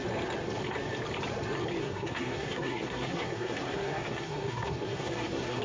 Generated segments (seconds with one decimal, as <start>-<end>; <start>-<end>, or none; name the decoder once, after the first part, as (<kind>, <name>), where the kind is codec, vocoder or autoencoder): 1.8-5.6 (codec, SNAC)

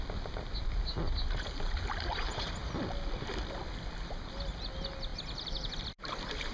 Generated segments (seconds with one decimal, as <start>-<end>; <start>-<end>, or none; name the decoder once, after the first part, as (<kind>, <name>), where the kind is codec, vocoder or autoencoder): none

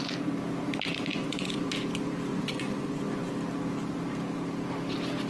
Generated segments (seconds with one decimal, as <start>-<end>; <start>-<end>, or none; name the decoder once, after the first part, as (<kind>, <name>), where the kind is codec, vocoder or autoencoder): 1.1-1.7 (vocoder, Vocos); 2.3-3.3

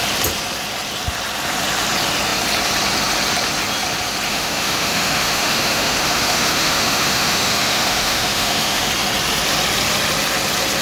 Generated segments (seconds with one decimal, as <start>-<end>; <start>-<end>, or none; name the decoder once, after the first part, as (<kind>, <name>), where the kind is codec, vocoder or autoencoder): 4.3-8.9 (autoencoder, DAC-VAE)

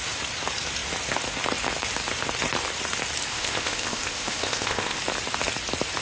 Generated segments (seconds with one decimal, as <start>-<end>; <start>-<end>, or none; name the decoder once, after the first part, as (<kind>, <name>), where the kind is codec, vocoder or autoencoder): 3.3-5.0 (codec, ZipCodec)

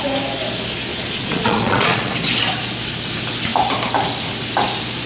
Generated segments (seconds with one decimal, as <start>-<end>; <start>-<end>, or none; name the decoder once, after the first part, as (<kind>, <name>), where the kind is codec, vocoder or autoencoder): 0.9-2.1 (vocoder, Vocos)

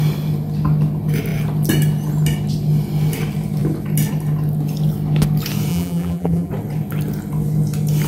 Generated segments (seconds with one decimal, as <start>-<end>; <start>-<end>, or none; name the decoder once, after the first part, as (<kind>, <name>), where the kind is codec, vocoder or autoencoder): 5.7-6.5 (vocoder, BigVGAN v2)